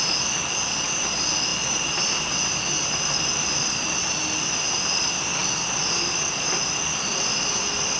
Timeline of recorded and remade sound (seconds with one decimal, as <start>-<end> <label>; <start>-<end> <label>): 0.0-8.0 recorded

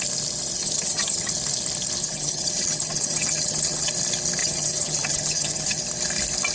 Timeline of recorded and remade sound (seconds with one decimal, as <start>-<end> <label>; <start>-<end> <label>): 0.0-0.6 recorded; 0.6-1.3 remade; 1.3-2.0 recorded; 2.0-3.9 remade; 3.9-4.4 recorded; 4.4-5.8 remade; 5.8-6.5 recorded

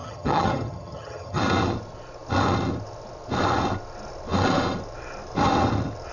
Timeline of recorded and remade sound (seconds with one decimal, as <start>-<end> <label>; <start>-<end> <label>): 0.0-1.4 remade; 1.4-6.1 recorded

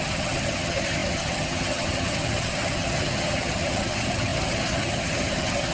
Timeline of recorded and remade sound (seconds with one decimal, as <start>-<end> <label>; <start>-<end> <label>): 0.0-5.7 remade

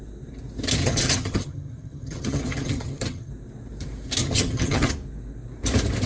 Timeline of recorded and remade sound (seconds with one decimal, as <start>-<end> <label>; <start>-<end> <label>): 0.0-0.8 recorded; 0.8-3.3 remade; 3.3-4.2 recorded; 4.2-4.9 remade; 4.9-6.1 recorded

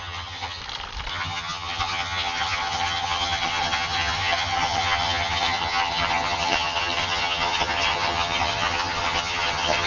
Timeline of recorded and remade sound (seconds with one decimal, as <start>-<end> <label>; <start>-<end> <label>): 0.0-0.6 remade; 0.6-1.1 recorded; 1.1-9.9 remade